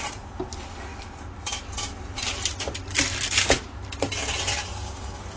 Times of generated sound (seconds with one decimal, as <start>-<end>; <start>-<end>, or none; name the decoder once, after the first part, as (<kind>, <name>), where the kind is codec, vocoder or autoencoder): none

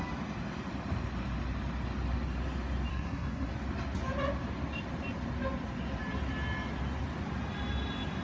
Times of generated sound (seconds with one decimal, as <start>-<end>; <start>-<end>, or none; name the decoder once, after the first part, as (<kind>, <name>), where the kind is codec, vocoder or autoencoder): 2.9-3.5 (codec, SNAC)

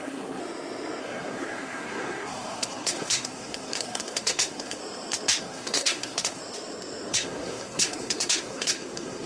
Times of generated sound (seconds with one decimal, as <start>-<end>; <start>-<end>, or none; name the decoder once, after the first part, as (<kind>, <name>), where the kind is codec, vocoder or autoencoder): 0.0-0.4 (codec, SNAC); 1.0-4.8; 5.4-6.4; 7.1-9.3

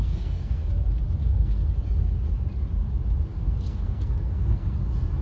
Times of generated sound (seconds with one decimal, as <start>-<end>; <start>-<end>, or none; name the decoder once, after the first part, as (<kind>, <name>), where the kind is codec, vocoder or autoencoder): 0.0-0.7 (codec, SNAC); 1.2-1.7; 3.3-4.8

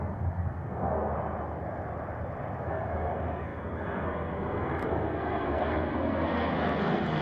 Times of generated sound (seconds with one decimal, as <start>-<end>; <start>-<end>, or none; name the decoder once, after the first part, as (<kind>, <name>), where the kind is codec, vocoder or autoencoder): 0.0-1.1 (codec, SNAC); 2.6-7.2

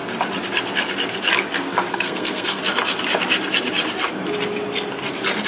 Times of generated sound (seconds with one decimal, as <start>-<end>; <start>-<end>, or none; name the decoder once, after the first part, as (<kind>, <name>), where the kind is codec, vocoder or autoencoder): 1.9-2.6 (codec, SNAC)

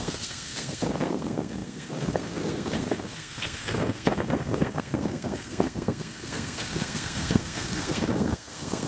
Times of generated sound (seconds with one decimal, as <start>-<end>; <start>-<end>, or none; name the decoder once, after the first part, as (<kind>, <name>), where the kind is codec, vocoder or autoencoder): 0.0-8.9 (codec, SNAC)

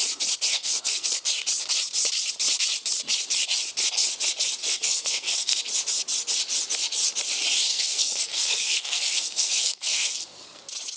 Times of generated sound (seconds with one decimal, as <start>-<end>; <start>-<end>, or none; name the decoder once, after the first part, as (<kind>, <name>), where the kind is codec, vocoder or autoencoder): 0.5-1.1 (codec, SNAC); 4.6-5.6; 7.7-10.6